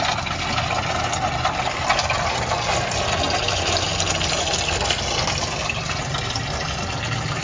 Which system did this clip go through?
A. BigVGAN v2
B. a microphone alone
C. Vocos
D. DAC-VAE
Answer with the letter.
B